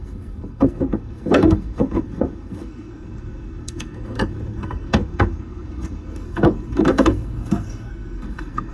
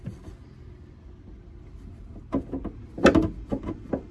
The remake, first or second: first